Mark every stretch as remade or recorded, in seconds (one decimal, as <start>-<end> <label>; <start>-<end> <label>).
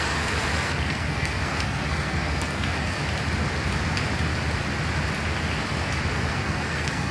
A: 0.0-3.0 remade; 3.0-6.1 recorded; 6.1-7.1 remade